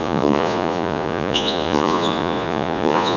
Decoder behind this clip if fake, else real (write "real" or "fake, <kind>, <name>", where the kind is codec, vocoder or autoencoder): fake, vocoder, Vocos